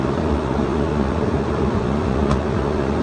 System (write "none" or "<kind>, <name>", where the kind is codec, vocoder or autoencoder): vocoder, Vocos